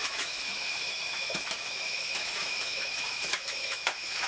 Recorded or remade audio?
remade